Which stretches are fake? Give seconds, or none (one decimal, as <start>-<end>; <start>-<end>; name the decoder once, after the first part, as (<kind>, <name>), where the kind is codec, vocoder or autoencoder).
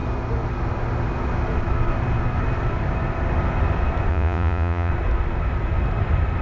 4.1-4.9 (vocoder, Vocos)